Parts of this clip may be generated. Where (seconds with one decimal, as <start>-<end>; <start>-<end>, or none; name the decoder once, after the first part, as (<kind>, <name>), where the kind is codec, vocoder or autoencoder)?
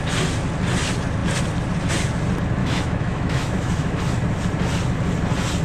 2.6-4.0 (autoencoder, DAC-VAE)